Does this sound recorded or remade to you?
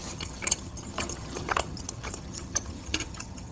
remade